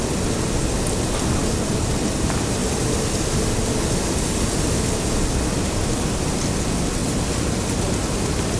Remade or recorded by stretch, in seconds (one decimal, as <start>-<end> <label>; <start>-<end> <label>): 0.0-1.4 recorded; 1.4-1.9 remade; 1.9-2.6 recorded; 2.6-4.6 remade; 4.6-8.6 recorded